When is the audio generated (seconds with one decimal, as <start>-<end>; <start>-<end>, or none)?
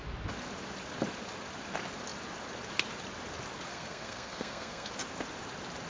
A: 3.7-4.9